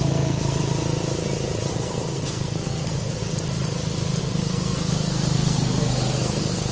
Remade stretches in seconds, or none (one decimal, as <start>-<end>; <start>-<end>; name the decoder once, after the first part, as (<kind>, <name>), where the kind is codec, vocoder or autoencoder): 0.0-0.6 (codec, SNAC); 1.7-3.2; 4.2-6.7